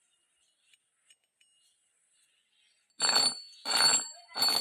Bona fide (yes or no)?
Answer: yes